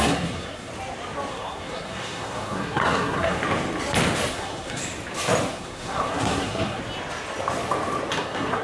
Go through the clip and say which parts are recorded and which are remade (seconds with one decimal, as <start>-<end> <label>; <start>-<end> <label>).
0.0-0.7 remade; 0.7-1.3 recorded; 1.3-3.4 remade; 3.4-4.3 recorded; 4.3-4.8 remade; 4.8-5.5 recorded; 5.5-6.8 remade; 6.8-8.1 recorded; 8.1-8.6 remade